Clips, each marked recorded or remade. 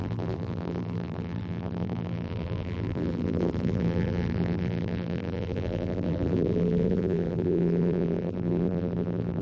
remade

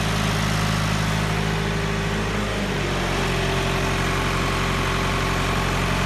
recorded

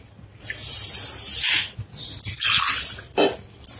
recorded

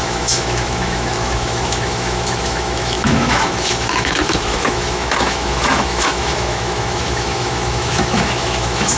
remade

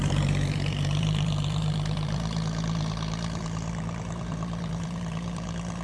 remade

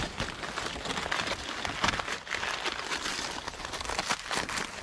recorded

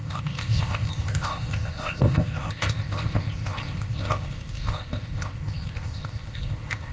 remade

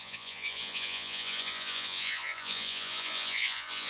remade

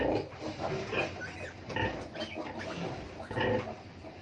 recorded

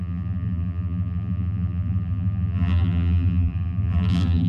remade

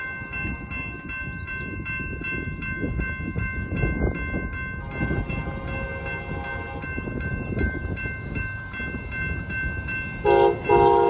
recorded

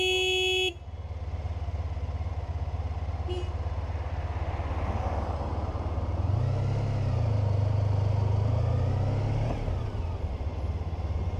recorded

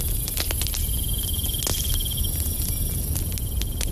recorded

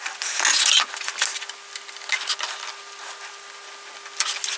recorded